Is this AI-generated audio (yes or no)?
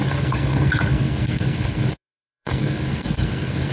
yes